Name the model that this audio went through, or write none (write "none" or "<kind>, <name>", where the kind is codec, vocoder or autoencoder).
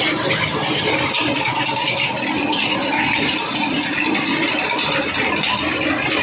none